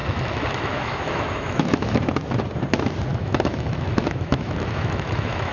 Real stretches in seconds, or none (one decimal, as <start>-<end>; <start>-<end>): 2.0-3.1